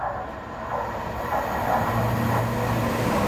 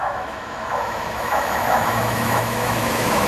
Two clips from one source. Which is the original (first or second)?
first